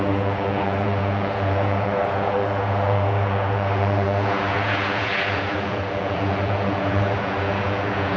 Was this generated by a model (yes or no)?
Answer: yes